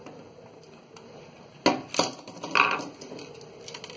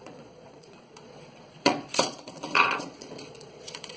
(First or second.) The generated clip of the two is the second